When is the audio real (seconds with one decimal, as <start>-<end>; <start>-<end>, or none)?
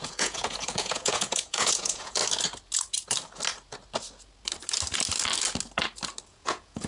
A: 2.2-6.3